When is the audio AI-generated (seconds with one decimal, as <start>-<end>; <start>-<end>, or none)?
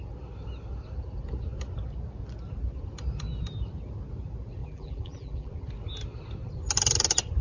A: 4.6-5.5